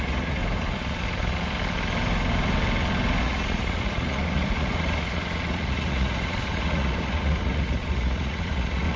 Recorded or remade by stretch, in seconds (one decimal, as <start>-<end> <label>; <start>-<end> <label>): 0.0-0.4 remade; 0.4-3.2 recorded; 3.2-9.0 remade